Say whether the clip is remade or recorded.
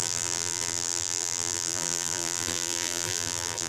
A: remade